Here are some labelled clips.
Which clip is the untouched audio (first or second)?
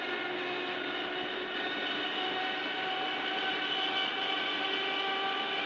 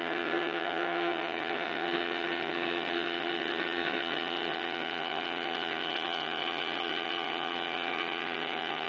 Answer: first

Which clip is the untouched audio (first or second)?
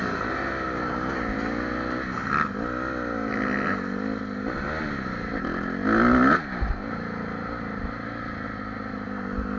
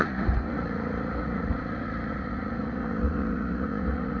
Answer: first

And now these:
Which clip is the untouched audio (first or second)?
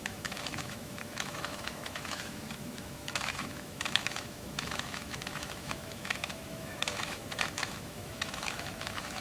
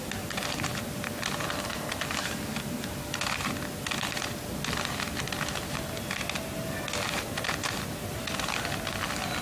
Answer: second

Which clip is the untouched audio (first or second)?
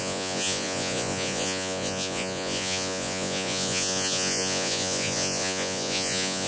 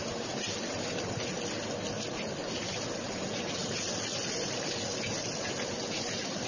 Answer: second